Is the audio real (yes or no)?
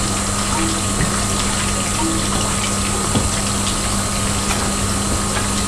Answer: yes